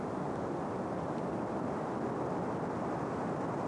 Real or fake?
real